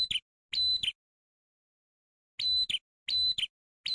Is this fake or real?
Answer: real